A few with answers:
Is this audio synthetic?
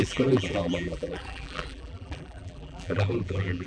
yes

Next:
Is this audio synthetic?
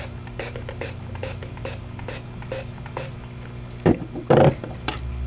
no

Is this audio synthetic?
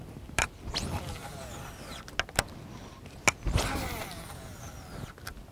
no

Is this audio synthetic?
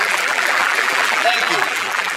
yes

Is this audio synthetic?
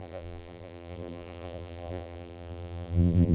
yes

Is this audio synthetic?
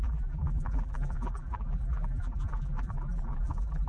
yes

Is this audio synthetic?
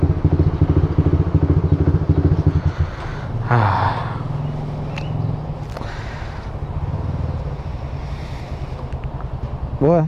no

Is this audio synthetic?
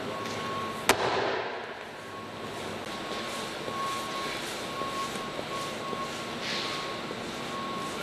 no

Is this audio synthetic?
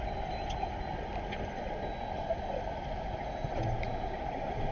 no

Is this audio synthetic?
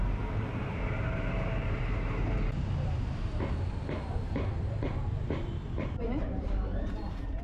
yes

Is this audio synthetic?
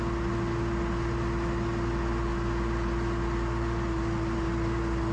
no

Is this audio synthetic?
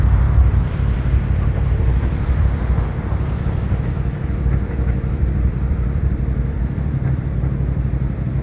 yes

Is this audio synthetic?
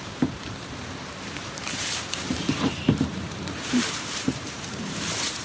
yes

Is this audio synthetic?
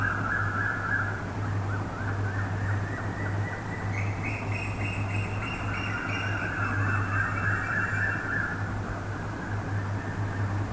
no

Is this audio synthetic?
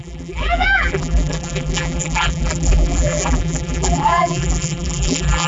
yes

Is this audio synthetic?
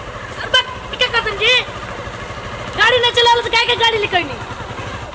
no